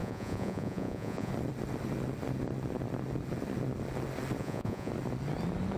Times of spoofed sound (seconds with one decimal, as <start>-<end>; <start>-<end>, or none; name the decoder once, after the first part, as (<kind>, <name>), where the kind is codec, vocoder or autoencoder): 0.0-1.3 (vocoder, Vocos); 4.4-4.9